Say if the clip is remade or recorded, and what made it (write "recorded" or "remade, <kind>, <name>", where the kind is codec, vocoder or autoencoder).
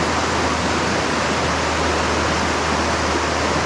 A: recorded